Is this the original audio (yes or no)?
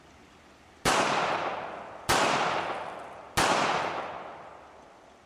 yes